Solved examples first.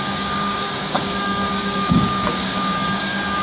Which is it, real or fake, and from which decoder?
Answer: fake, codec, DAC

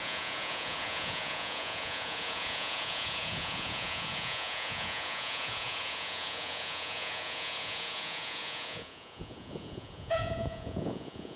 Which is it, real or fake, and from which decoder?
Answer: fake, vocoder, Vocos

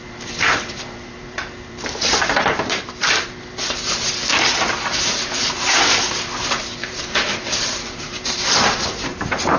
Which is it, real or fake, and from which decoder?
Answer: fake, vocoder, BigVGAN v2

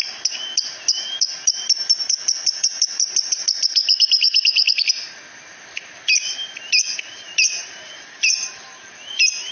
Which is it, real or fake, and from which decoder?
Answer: real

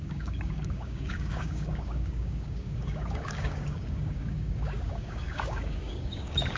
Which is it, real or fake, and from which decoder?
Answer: fake, codec, DAC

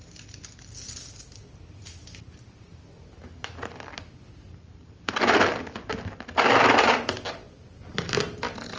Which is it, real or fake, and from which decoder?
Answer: real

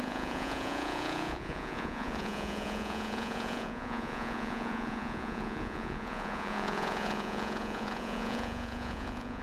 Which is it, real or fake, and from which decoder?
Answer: fake, vocoder, Vocos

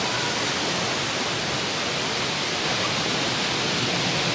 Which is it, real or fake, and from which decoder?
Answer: real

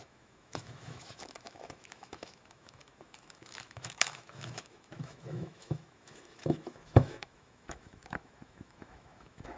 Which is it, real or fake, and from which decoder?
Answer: fake, autoencoder, DAC-VAE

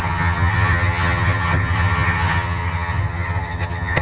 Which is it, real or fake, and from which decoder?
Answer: fake, vocoder, HiFi-GAN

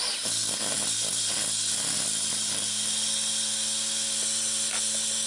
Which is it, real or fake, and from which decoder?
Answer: real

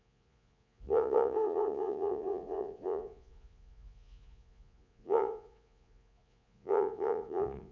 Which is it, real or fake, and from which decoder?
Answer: fake, vocoder, Vocos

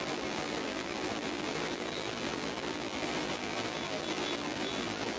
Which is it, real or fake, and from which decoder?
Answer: fake, vocoder, BigVGAN v2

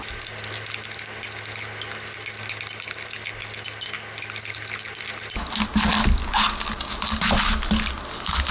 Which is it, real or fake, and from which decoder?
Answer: real